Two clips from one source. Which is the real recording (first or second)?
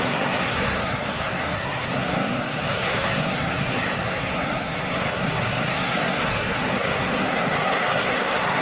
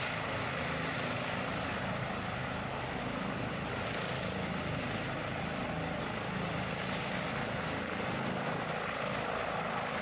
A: second